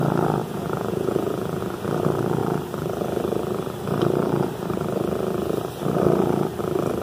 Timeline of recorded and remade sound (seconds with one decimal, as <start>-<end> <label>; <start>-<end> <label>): 0.0-0.4 recorded; 0.4-1.6 remade; 1.6-7.0 recorded